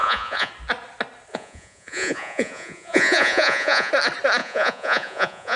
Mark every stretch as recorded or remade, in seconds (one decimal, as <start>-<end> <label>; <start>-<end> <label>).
0.0-0.5 remade; 0.5-1.3 recorded; 1.3-3.9 remade; 3.9-4.4 recorded; 4.4-5.6 remade